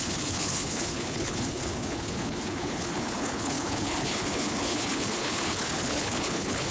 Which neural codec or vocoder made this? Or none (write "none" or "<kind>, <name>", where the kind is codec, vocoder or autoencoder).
codec, HILCodec